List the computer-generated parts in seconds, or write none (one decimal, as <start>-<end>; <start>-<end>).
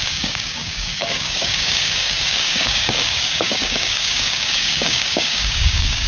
0.0-6.1